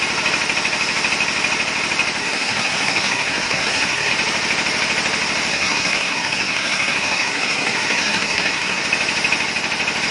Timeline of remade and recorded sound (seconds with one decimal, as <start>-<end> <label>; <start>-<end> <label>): 0.0-2.2 recorded; 2.2-4.1 remade; 4.1-5.5 recorded; 5.5-8.8 remade; 8.8-10.1 recorded